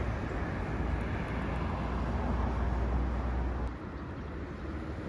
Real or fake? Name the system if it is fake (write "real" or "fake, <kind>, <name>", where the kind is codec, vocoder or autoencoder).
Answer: real